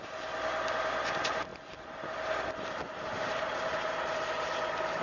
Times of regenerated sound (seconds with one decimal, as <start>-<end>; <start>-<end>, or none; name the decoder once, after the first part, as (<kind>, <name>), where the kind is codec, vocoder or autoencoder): none

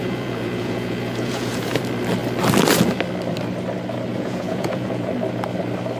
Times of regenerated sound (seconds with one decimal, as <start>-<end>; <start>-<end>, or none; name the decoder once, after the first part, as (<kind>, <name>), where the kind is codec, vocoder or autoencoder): 0.0-1.8 (vocoder, Vocos); 4.1-5.1

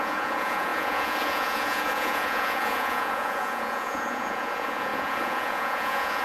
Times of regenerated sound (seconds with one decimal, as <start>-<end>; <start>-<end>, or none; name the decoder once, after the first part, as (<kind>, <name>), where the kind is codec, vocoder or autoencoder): 0.0-6.2 (vocoder, Vocos)

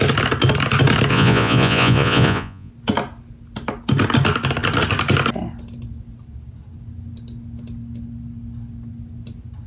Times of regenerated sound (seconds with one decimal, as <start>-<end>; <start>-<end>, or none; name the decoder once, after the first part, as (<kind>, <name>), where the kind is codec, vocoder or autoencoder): 1.1-2.7 (vocoder, Vocos)

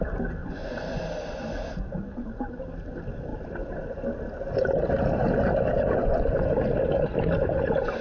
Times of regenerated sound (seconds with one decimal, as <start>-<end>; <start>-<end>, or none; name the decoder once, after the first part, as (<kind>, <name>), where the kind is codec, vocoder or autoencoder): 0.4-1.0 (vocoder, Vocos); 6.0-6.5

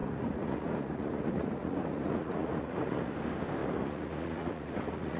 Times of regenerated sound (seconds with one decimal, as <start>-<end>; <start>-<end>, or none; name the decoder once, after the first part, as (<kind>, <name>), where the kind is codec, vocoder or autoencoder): 0.0-3.1 (vocoder, Vocos); 3.6-5.2

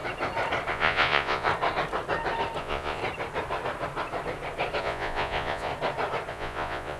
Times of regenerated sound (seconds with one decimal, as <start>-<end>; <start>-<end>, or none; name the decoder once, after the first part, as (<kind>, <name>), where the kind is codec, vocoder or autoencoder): 0.7-1.5 (vocoder, Vocos); 2.6-3.0; 4.8-5.7; 6.3-7.0